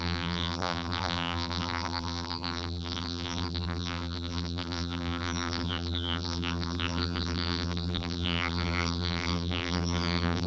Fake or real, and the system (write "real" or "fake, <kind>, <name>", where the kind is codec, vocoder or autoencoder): fake, vocoder, BigVGAN v2